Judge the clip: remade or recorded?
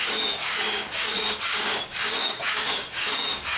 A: remade